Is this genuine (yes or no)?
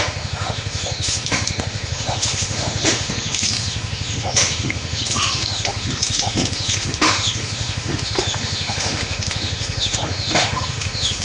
no